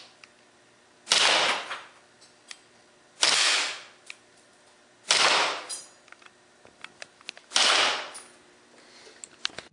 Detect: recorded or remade recorded